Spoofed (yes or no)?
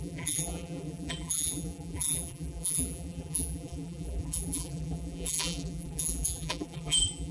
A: yes